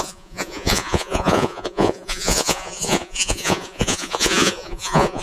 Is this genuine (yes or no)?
no